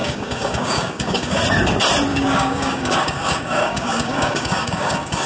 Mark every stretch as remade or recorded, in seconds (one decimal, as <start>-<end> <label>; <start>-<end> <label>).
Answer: 0.0-1.4 remade; 1.4-2.1 recorded; 2.1-5.3 remade